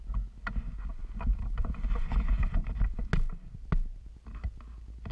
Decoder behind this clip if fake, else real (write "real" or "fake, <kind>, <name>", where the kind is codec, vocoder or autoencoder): real